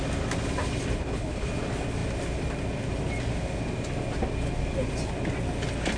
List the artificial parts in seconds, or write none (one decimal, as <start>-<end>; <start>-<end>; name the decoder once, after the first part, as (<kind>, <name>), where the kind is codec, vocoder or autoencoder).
1.0-1.5 (codec, HILCodec)

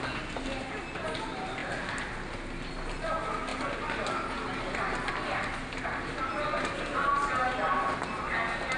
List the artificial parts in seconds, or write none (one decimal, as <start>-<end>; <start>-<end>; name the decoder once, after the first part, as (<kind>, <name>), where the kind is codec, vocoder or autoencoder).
none

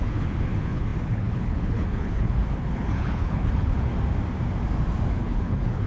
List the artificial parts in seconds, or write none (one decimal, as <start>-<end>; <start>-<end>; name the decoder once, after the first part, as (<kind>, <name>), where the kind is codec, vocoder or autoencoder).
0.0-3.9 (codec, HILCodec); 5.1-5.9

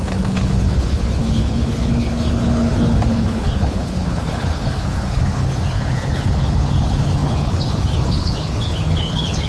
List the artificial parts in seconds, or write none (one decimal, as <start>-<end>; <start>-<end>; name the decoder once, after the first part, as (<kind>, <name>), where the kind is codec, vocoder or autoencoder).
0.0-9.5 (codec, HILCodec)

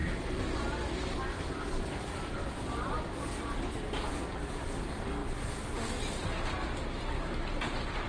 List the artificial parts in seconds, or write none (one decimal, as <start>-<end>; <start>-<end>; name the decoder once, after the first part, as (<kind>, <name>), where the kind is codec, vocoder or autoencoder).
none

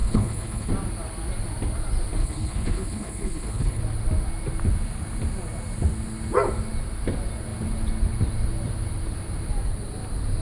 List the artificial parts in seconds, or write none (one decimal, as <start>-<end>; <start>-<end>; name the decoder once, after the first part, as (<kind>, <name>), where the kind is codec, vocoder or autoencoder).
0.0-0.7 (codec, HILCodec); 2.2-3.8